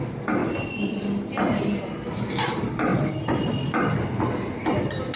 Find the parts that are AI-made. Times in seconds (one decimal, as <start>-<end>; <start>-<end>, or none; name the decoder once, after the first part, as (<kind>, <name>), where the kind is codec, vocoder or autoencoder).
2.9-3.5 (vocoder, BigVGAN v2)

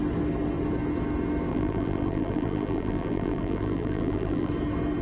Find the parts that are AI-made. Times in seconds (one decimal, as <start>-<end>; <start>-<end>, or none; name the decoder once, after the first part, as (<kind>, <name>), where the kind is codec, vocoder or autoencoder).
1.5-4.5 (vocoder, BigVGAN v2)

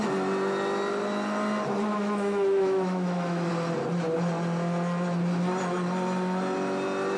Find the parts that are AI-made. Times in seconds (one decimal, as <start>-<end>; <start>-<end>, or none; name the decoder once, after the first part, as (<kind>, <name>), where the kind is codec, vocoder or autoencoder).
1.9-3.5 (autoencoder, DAC-VAE)

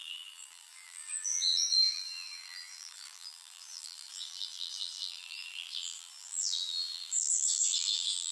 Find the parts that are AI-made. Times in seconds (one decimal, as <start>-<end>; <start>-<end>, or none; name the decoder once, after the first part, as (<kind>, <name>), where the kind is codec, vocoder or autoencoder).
0.0-8.3 (vocoder, BigVGAN v2)

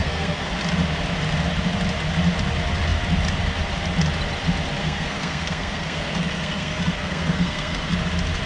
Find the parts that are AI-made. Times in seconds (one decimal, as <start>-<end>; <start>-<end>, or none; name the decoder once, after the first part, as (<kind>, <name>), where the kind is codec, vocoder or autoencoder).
0.0-0.5 (codec, SNAC); 4.8-7.9

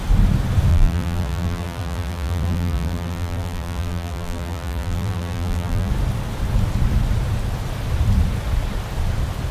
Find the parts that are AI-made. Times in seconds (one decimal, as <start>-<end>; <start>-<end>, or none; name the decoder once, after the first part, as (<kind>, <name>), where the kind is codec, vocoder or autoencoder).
0.7-5.9 (vocoder, BigVGAN v2)